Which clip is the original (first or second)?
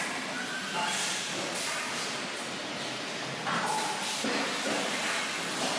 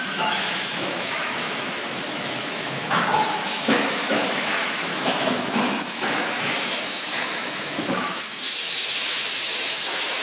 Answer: first